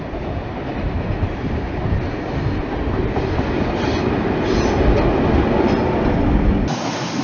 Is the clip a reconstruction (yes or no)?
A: no